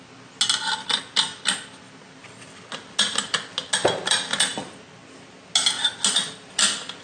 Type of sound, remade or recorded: recorded